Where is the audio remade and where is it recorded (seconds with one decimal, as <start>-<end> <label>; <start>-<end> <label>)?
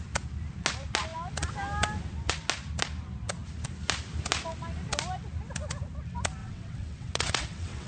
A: 0.0-6.4 recorded; 6.4-7.9 remade